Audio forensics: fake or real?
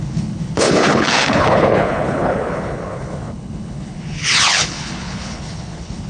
fake